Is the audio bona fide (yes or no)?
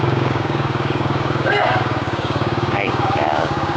no